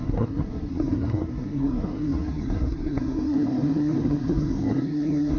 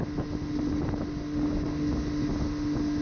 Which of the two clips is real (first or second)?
second